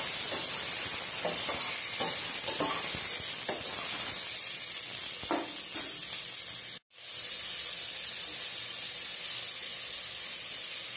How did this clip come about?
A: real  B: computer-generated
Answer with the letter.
A